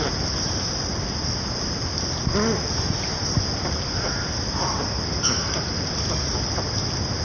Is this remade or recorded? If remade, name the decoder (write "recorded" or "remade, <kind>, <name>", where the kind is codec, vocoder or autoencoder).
recorded